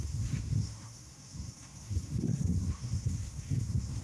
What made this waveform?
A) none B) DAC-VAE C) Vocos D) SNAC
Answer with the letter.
D